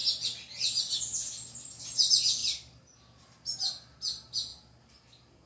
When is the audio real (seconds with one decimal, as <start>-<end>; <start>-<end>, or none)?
0.0-5.5